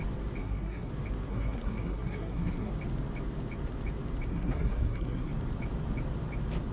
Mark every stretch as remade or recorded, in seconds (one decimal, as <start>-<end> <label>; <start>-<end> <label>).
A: 0.0-0.4 recorded; 0.4-0.9 remade; 0.9-1.3 recorded; 1.3-2.7 remade; 2.7-4.3 recorded; 4.3-5.3 remade; 5.3-6.7 recorded